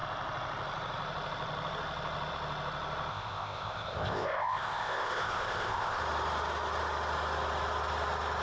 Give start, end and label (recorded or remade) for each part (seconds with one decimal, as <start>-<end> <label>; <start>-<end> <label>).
0.0-3.1 recorded; 3.1-6.0 remade; 6.0-8.4 recorded